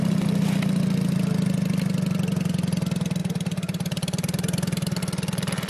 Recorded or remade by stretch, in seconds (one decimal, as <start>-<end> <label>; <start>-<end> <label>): 0.0-3.2 recorded; 3.2-5.0 remade; 5.0-5.7 recorded